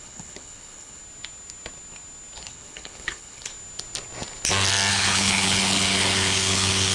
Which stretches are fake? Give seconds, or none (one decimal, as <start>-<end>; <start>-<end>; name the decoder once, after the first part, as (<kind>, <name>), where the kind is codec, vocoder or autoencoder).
0.0-1.0 (codec, HILCodec); 2.5-3.5; 4.9-6.9